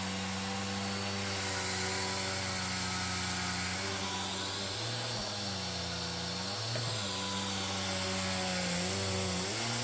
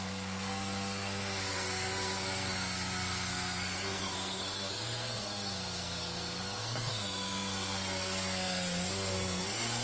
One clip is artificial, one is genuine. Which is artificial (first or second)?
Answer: second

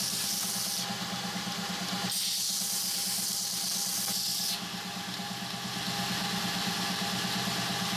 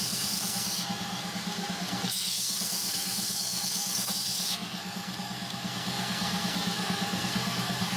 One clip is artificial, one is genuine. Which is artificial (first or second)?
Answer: second